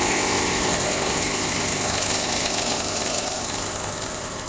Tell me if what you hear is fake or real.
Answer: fake